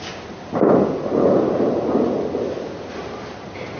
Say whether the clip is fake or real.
real